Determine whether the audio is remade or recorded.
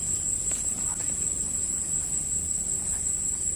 recorded